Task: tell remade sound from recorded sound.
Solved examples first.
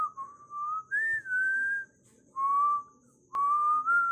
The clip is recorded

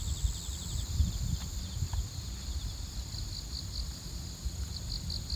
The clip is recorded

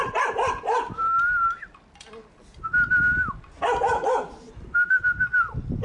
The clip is recorded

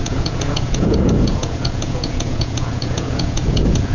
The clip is remade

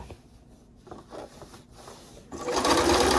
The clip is recorded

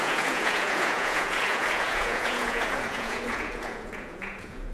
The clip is remade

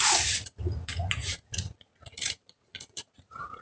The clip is remade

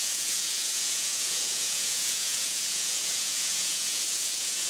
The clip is remade